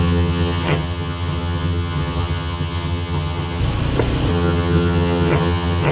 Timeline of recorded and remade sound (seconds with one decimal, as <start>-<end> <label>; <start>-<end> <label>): 0.0-3.6 remade; 3.6-4.3 recorded; 4.3-5.9 remade